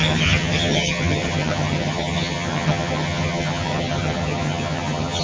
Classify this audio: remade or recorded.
remade